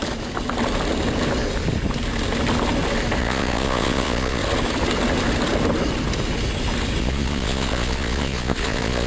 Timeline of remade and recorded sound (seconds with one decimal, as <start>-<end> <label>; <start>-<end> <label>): 0.0-3.2 recorded; 3.2-4.4 remade; 4.4-7.0 recorded; 7.0-9.1 remade